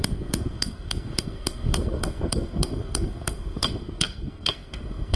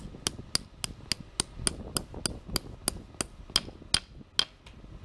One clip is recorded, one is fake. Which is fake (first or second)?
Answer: first